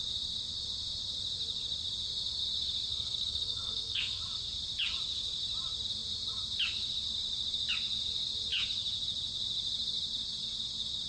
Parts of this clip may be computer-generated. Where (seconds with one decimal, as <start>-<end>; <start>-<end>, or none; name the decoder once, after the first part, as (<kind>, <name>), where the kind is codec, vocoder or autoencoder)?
2.9-4.2 (codec, SNAC)